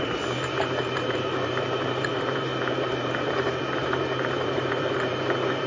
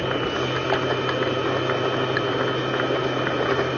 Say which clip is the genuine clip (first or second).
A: second